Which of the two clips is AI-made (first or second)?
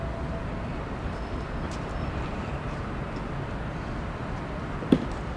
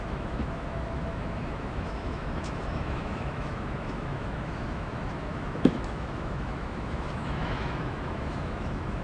second